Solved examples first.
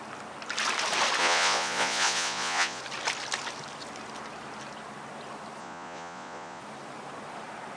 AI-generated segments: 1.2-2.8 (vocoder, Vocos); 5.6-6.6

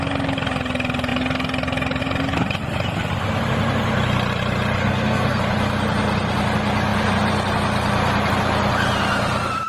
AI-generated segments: 4.8-5.4 (codec, SNAC)

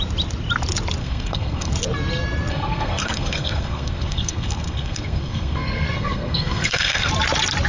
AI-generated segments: 1.0-1.7 (codec, SNAC); 2.5-7.1

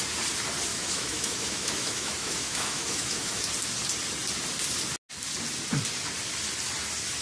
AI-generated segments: 0.7-3.5 (autoencoder, DAC-VAE)

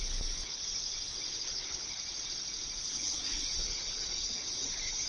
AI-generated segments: 0.0-0.6 (codec, HILCodec); 1.4-2.0; 2.9-5.1

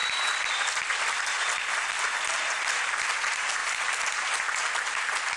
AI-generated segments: none